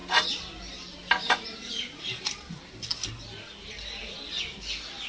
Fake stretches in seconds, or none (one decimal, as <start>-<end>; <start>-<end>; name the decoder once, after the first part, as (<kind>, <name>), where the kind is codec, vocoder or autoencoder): none